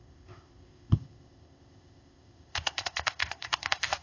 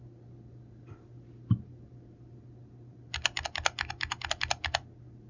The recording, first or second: second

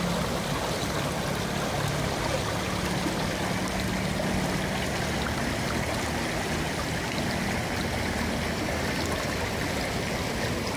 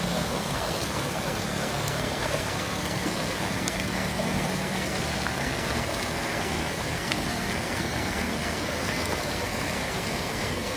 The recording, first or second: first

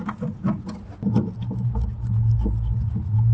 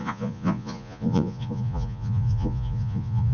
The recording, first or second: first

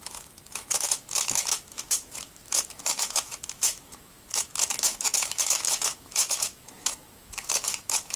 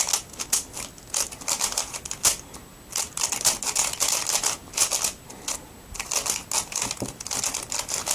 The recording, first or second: second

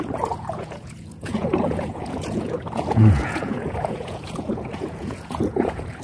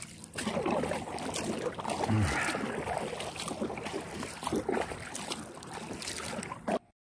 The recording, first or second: second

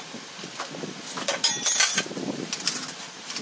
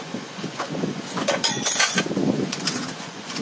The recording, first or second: first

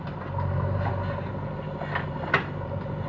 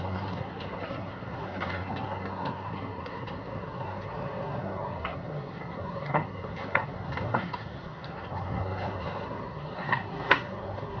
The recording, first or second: first